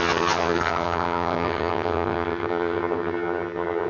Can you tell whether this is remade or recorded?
remade